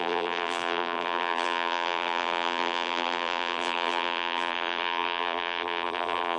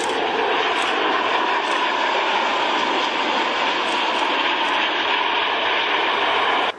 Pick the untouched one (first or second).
second